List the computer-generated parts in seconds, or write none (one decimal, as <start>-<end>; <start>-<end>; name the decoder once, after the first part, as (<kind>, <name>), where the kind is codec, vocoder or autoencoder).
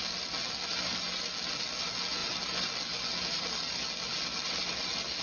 none